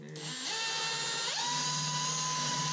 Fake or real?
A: real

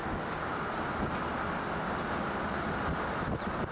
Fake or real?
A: real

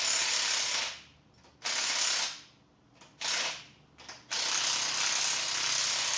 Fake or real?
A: real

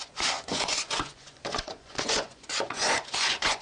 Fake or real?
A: fake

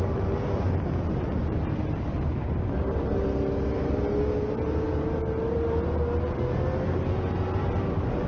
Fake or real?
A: real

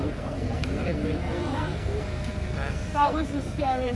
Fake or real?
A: fake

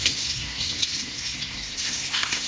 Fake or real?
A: fake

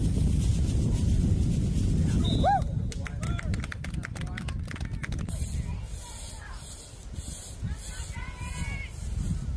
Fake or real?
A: real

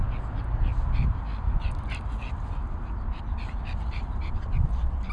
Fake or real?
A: real